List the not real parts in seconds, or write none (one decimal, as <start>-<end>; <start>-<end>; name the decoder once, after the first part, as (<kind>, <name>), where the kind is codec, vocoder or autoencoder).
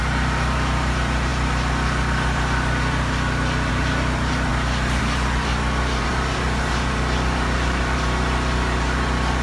0.0-1.3 (vocoder, BigVGAN v2); 3.7-4.5; 5.0-5.5; 6.0-9.4